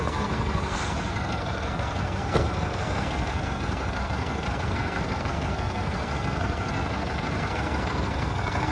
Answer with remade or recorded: remade